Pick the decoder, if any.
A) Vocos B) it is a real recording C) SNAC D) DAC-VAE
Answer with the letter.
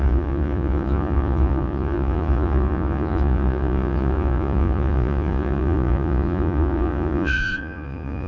A